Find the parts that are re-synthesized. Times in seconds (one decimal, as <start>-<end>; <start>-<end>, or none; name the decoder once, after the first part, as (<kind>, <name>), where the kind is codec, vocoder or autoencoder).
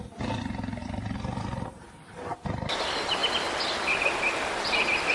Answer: none